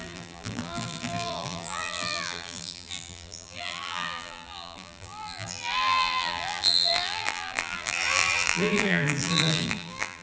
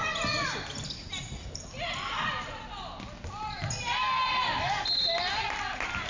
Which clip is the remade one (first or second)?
first